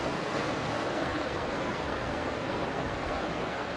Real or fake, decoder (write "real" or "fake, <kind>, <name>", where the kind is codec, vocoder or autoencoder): fake, codec, SNAC